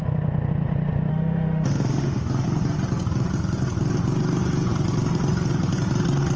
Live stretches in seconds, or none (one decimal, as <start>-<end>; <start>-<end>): 0.0-1.1; 2.3-6.4